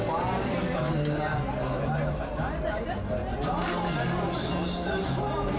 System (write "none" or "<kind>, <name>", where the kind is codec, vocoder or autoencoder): none